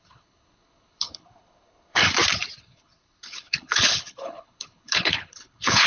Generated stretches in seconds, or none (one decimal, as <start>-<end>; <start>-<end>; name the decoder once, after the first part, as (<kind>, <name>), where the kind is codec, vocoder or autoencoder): 0.0-2.0 (codec, HILCodec); 2.6-5.9